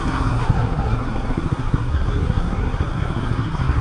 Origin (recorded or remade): remade